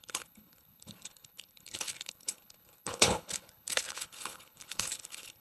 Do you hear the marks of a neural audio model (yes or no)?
yes